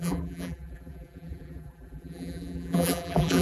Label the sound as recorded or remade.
remade